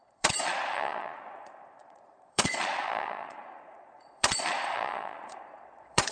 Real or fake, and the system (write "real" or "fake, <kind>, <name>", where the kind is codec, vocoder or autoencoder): fake, vocoder, Vocos